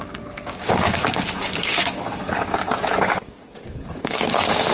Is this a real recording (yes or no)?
no